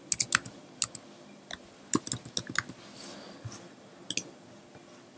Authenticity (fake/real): real